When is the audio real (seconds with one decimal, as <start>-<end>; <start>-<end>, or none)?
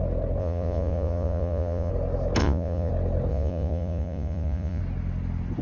0.0-0.4; 1.9-2.4; 2.9-3.3; 4.8-5.6